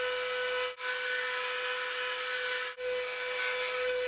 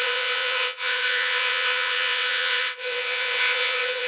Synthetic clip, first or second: second